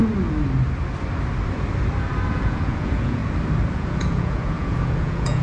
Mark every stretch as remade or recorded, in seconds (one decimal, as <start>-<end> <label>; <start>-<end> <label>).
0.0-2.3 recorded; 2.3-3.2 remade; 3.2-3.7 recorded; 3.7-5.4 remade